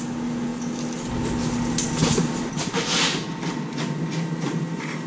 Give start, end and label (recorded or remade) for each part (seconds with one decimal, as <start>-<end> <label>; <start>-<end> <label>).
0.0-5.1 recorded